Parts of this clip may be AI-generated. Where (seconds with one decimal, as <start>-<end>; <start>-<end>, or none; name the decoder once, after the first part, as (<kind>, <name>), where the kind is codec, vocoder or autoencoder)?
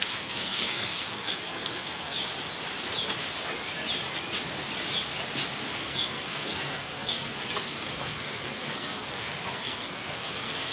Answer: 0.0-2.2 (codec, SNAC); 5.6-10.7